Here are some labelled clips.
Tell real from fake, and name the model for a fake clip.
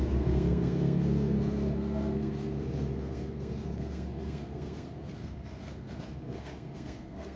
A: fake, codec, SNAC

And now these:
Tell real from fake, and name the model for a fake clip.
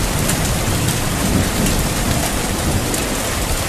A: fake, vocoder, BigVGAN v2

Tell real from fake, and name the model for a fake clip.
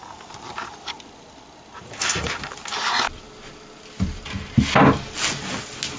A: real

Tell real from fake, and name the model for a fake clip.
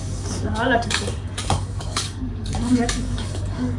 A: fake, codec, DAC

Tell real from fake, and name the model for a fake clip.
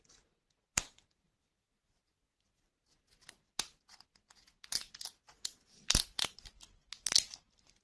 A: real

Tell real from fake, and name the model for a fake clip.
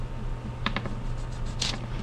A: real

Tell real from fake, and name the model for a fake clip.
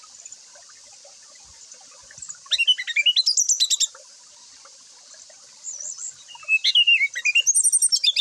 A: real